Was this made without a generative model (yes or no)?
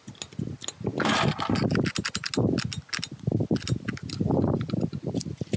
yes